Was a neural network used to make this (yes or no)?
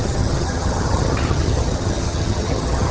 yes